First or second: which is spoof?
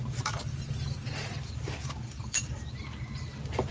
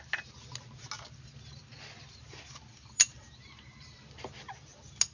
first